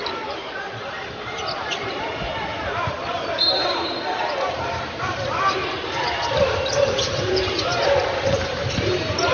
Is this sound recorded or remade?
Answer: remade